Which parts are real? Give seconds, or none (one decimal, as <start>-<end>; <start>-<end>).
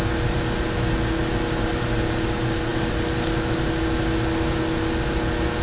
0.0-5.6